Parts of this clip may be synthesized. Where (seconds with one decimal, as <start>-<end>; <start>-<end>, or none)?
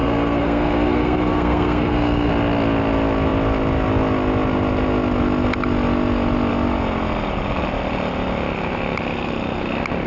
0.0-2.3